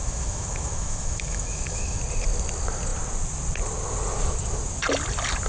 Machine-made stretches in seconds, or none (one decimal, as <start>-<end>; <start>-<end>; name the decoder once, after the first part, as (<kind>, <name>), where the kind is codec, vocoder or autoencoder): 0.0-2.0 (autoencoder, DAC-VAE)